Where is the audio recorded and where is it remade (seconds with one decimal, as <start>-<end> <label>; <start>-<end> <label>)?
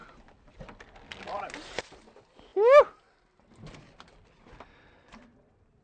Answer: 0.0-5.8 recorded